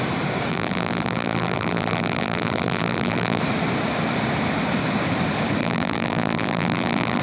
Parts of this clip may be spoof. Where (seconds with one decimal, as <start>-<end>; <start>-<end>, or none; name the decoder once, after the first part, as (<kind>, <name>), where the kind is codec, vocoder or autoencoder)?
0.5-3.4 (vocoder, BigVGAN v2); 5.6-7.2